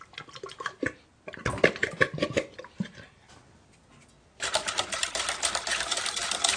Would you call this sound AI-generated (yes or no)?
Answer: no